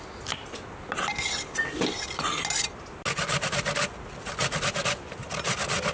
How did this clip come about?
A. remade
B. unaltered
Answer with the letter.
B